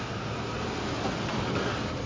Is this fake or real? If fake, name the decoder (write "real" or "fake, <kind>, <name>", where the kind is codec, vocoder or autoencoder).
real